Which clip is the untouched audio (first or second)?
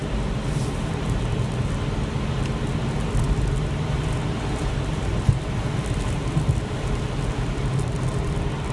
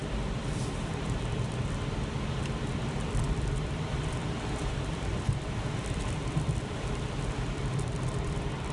first